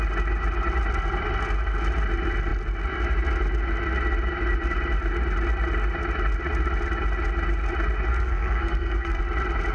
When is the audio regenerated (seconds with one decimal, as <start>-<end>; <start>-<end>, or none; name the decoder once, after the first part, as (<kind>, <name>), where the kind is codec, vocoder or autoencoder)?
8.1-9.2 (codec, SNAC)